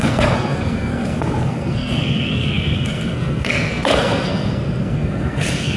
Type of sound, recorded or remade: remade